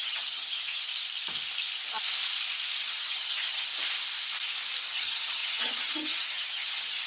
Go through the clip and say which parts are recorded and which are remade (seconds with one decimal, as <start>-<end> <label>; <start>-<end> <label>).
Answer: 0.0-0.9 remade; 0.9-2.8 recorded; 2.8-3.7 remade; 3.7-4.8 recorded; 4.8-7.1 remade